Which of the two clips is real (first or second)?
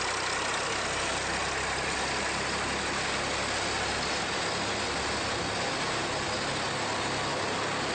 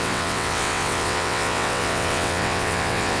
first